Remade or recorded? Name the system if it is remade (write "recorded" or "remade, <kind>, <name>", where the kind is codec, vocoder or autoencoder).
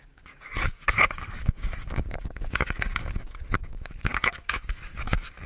remade, codec, DAC